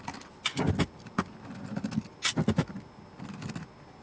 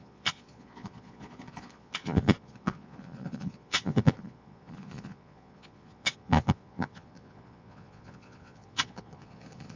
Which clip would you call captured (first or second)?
first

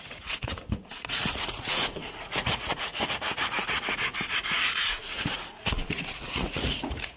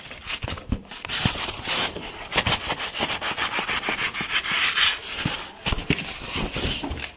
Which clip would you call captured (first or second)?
second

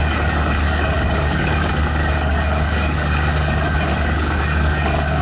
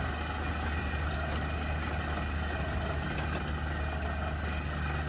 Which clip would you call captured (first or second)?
second